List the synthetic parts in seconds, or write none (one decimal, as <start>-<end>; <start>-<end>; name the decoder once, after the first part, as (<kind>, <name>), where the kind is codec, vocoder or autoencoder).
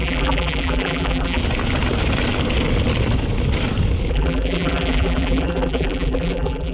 0.0-1.4 (vocoder, BigVGAN v2); 4.1-6.7